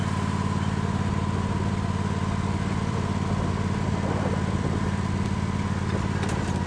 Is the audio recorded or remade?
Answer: recorded